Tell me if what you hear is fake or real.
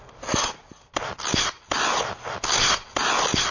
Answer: real